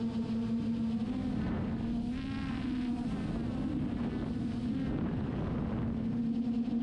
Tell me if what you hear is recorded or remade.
recorded